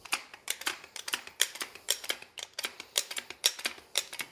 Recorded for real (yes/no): no